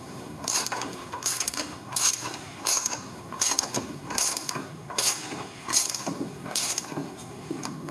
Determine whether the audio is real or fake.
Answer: fake